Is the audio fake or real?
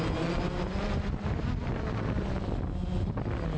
real